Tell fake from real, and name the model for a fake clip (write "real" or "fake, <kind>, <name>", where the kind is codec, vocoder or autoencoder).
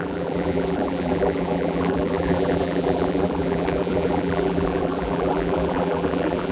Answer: fake, vocoder, BigVGAN v2